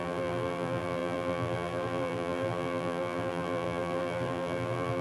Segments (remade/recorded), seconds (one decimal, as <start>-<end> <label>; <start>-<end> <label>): 0.0-5.0 remade